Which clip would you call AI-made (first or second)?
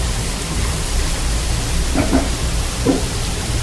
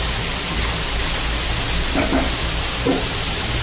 first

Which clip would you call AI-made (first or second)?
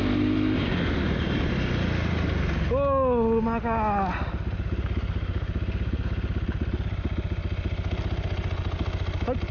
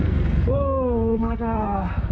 second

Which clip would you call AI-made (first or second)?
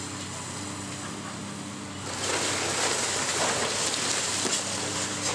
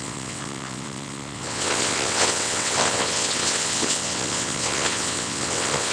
second